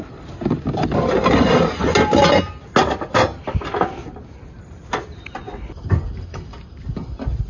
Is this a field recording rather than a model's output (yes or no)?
yes